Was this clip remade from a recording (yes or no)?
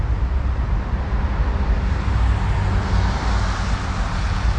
no